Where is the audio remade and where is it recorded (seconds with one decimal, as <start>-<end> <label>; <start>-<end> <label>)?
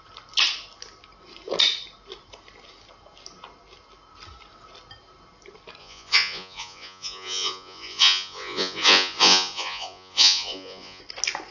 0.0-5.8 recorded; 5.8-11.0 remade; 11.0-11.5 recorded